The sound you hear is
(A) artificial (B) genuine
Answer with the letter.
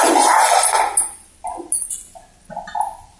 B